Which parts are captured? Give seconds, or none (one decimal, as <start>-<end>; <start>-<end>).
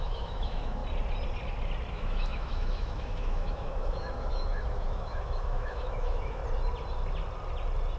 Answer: 0.8-1.9; 6.4-8.0